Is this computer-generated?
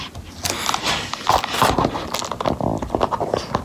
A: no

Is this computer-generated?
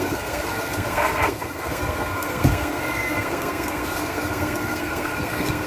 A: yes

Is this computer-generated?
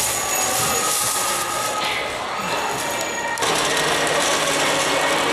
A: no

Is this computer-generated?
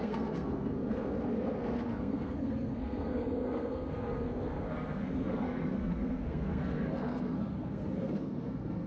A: yes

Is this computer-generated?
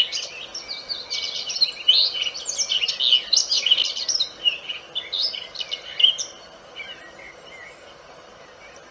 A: no